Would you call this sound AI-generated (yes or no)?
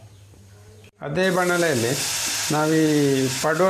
no